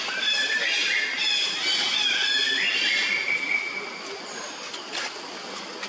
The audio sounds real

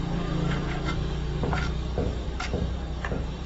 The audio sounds fake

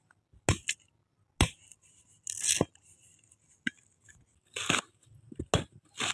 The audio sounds real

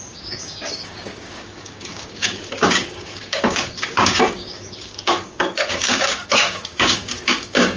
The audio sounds fake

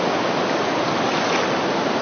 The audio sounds real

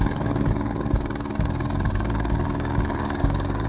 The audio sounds fake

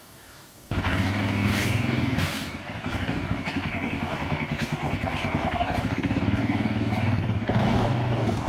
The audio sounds fake